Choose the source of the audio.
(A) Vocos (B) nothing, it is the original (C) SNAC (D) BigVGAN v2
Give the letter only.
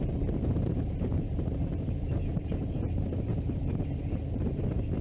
D